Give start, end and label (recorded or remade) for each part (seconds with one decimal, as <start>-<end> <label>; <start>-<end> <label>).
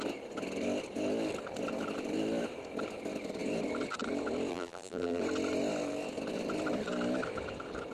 0.0-4.5 recorded; 4.5-5.2 remade; 5.2-7.9 recorded